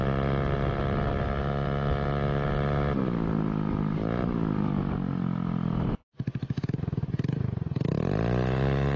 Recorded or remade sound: recorded